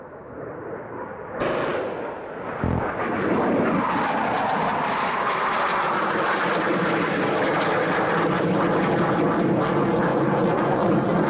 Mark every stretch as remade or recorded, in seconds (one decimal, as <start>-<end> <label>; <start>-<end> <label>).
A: 0.0-10.1 recorded; 10.1-11.3 remade